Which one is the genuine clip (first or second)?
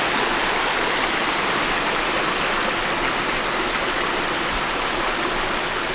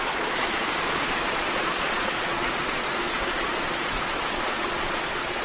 first